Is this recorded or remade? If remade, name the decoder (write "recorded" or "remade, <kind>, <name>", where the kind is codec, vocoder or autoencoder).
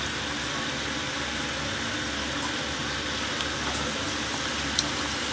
recorded